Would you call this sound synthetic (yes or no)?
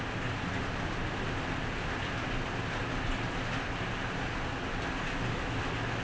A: no